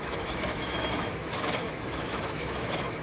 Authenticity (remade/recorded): remade